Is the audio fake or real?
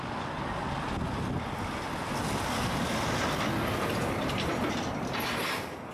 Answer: real